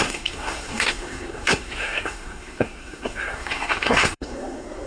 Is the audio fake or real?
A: fake